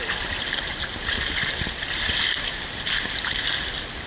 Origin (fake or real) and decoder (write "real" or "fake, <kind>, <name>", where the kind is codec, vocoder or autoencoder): real